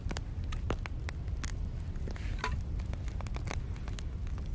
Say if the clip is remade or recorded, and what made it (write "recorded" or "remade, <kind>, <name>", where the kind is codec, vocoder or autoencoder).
recorded